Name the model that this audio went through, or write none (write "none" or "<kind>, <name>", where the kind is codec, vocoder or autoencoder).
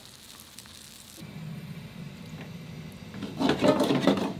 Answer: none